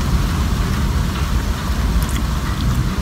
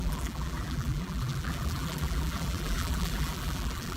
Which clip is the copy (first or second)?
second